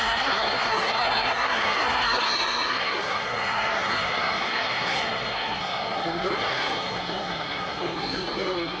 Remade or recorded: remade